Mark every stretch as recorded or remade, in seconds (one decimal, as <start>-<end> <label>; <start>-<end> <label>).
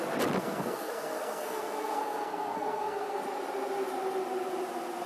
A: 0.0-0.4 recorded; 0.4-3.2 remade; 3.2-5.1 recorded